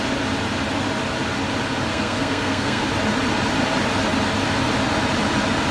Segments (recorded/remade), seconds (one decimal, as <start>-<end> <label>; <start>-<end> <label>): 0.0-1.9 recorded; 1.9-2.9 remade; 2.9-5.7 recorded